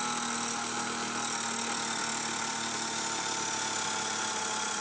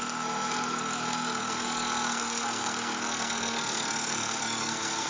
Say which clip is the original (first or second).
first